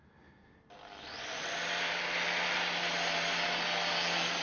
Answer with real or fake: real